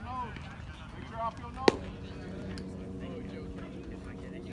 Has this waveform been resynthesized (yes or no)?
no